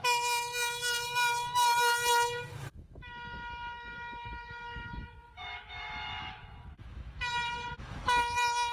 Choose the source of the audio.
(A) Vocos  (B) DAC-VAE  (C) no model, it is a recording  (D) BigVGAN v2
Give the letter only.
B